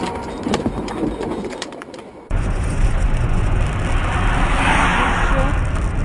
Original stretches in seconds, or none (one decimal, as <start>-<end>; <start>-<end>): 0.0-0.5; 3.6-6.0